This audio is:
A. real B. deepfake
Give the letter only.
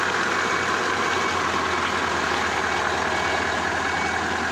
A